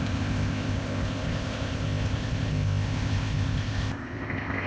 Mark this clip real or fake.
fake